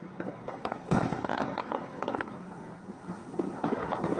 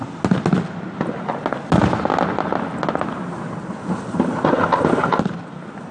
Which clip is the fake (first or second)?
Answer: first